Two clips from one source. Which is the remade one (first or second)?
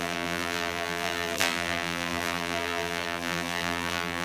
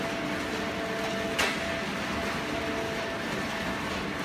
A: first